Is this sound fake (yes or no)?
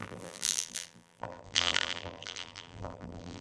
yes